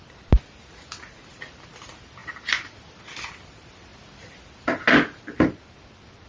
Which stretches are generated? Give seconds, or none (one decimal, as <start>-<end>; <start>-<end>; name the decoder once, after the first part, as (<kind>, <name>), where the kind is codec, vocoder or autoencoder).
none

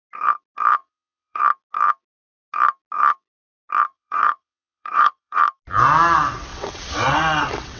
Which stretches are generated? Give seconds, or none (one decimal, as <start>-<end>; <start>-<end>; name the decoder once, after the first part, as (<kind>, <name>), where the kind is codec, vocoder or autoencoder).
0.8-1.4 (vocoder, WaveNeXt); 3.9-5.4; 6.5-7.8

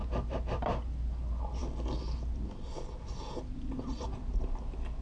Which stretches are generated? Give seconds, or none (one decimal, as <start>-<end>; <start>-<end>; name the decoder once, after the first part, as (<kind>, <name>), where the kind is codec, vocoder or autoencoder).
none

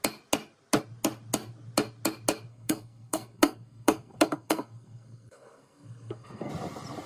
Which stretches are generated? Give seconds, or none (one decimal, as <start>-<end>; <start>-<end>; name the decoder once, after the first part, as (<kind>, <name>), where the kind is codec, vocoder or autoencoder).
2.5-6.5 (codec, SNAC)